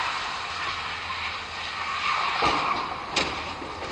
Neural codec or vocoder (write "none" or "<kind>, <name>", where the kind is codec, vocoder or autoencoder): none